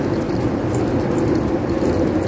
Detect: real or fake real